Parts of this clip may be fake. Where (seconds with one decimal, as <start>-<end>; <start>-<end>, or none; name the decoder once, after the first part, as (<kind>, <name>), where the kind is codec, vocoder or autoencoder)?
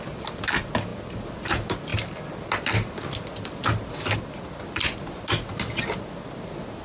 none